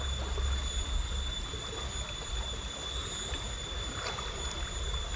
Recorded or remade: recorded